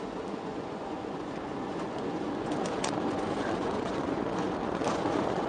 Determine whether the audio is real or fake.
fake